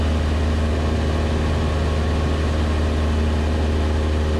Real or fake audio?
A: real